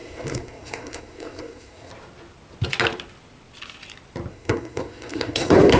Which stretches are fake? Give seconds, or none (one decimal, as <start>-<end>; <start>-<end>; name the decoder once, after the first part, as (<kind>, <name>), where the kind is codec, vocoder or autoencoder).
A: 0.0-1.9 (codec, SNAC); 4.3-5.8